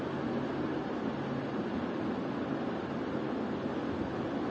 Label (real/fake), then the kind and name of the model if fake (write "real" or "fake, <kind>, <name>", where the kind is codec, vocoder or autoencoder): real